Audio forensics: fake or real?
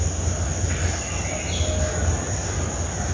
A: real